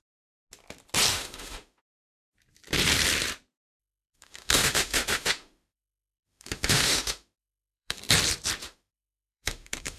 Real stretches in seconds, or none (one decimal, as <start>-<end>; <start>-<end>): 0.0-1.1; 1.8-3.8; 8.0-8.6